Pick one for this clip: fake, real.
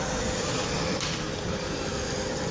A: real